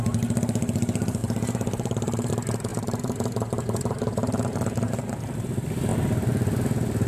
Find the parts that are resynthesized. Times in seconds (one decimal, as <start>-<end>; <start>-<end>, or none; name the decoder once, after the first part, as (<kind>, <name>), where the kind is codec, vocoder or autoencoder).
1.2-2.3 (vocoder, BigVGAN v2); 2.7-5.1